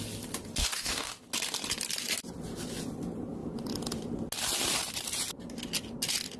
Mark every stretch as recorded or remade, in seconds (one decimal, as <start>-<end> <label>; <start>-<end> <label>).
0.0-0.6 recorded; 0.6-1.2 remade; 1.2-6.4 recorded